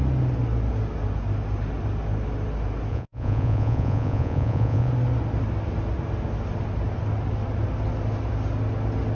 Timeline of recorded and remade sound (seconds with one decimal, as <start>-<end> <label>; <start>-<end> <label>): 0.0-2.9 recorded; 2.9-4.9 remade; 4.9-9.1 recorded

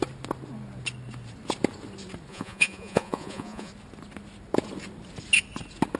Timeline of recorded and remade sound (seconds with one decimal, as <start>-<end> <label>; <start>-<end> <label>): 0.0-2.3 recorded; 2.3-3.7 remade; 3.7-6.0 recorded

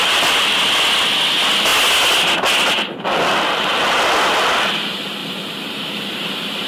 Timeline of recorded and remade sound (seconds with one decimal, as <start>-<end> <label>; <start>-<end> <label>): 0.0-5.2 recorded; 5.2-6.7 remade

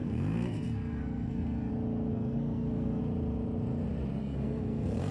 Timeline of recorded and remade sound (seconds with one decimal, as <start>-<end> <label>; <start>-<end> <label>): 0.0-1.7 remade; 1.7-2.1 recorded; 2.1-3.0 remade; 3.0-4.2 recorded; 4.2-5.1 remade

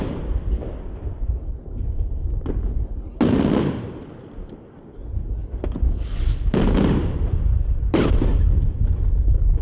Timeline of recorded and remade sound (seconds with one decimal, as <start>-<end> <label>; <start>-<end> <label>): 0.0-9.6 recorded

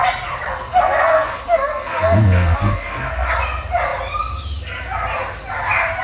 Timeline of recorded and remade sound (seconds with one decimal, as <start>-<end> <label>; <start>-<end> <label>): 0.0-0.5 recorded; 0.5-3.3 remade; 3.3-6.0 recorded

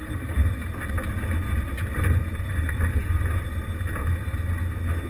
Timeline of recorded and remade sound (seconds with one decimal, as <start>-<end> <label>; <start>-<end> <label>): 0.0-0.5 remade; 0.5-1.9 recorded; 1.9-3.1 remade; 3.1-5.1 recorded